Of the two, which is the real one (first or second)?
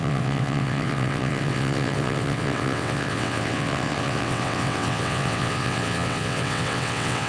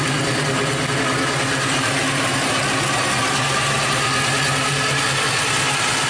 second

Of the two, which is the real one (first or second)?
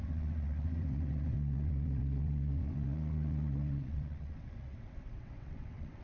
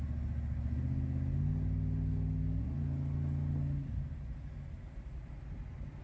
second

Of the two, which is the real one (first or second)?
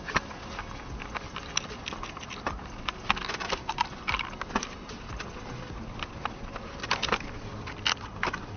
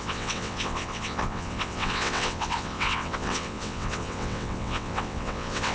first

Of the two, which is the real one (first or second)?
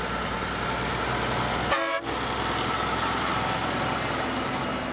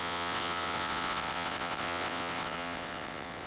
first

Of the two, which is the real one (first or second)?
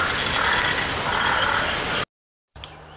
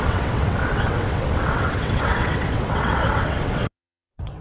first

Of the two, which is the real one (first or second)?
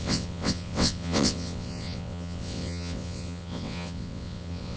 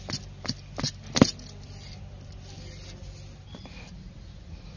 second